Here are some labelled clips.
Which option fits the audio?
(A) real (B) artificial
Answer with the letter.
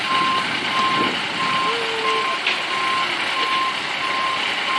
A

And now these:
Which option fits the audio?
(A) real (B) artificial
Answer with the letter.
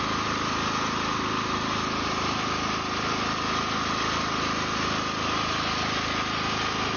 A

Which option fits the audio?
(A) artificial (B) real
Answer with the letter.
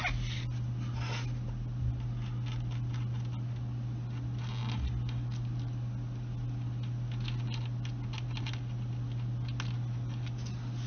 B